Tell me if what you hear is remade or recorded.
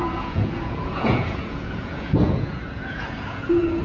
remade